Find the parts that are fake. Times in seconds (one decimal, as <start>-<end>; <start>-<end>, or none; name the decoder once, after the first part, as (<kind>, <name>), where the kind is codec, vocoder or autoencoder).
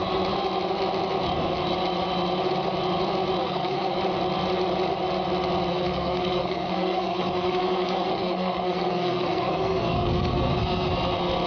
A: 3.4-4.0 (codec, SNAC); 5.7-10.9